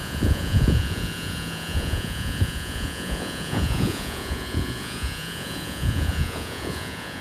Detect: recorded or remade remade